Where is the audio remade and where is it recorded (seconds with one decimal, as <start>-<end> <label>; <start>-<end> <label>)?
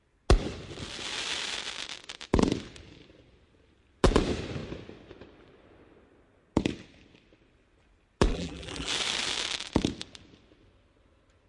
0.0-8.3 recorded; 8.3-8.9 remade; 8.9-11.5 recorded